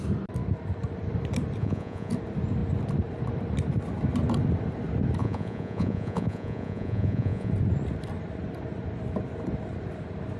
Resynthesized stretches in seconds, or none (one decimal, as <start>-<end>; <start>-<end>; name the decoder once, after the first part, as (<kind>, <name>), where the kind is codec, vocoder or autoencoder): 1.6-2.1 (vocoder, Vocos); 5.2-7.5